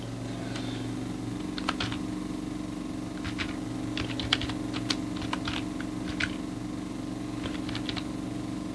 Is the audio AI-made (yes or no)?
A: no